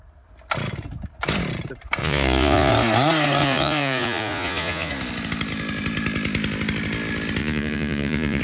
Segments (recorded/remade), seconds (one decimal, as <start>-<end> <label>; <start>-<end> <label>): 0.0-2.0 recorded; 2.0-2.7 remade; 2.7-3.4 recorded; 3.4-4.9 remade; 4.9-7.4 recorded; 7.4-8.4 remade